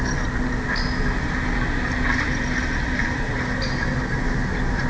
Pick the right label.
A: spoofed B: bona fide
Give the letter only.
B